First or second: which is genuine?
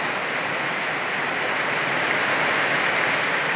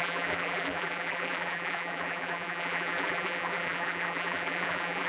first